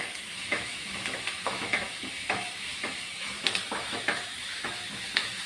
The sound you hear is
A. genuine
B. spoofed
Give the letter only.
B